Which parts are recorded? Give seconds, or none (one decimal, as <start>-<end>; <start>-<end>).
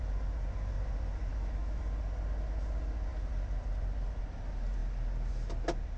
0.0-1.3; 1.8-6.0